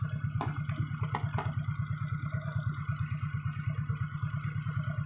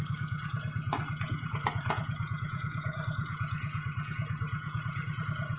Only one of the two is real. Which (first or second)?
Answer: first